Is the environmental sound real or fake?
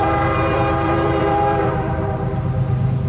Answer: fake